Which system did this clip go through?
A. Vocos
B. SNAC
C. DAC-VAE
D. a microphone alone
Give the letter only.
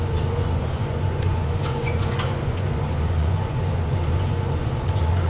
A